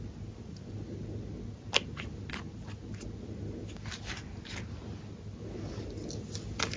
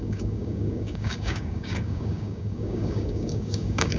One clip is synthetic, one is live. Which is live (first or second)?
first